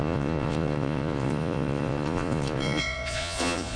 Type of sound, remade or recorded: remade